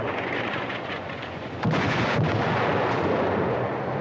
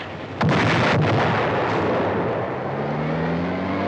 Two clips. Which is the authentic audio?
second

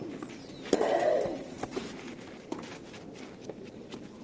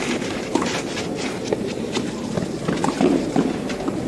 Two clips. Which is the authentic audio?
first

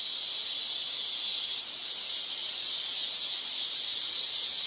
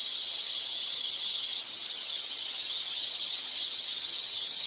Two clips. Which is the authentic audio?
first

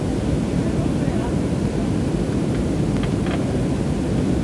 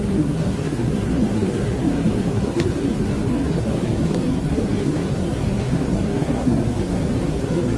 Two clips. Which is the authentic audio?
first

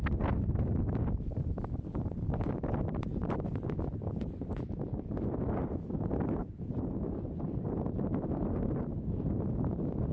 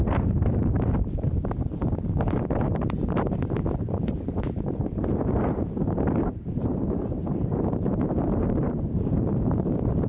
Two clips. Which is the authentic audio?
first